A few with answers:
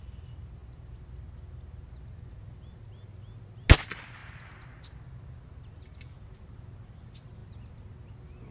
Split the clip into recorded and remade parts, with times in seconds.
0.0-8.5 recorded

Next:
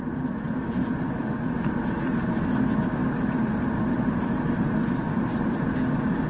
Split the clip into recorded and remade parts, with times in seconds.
0.0-6.3 recorded

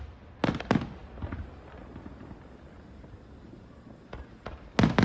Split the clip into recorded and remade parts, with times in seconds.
0.0-5.0 recorded

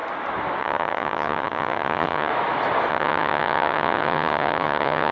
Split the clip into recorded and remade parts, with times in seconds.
0.0-0.6 recorded; 0.6-2.3 remade; 2.3-2.9 recorded; 2.9-5.1 remade

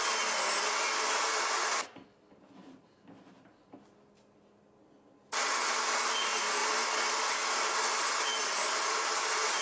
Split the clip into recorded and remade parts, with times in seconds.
0.0-9.6 recorded